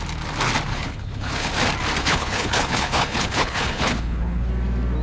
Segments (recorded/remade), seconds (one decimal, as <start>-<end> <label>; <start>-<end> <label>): 0.0-0.7 recorded; 0.7-1.5 remade; 1.5-2.0 recorded; 2.0-4.5 remade; 4.5-5.0 recorded